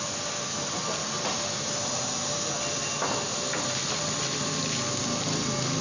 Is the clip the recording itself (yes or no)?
yes